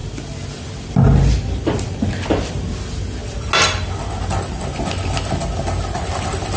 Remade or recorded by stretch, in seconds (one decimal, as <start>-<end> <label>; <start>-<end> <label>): 0.0-6.6 recorded